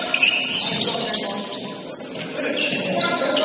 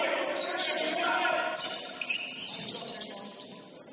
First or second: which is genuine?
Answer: first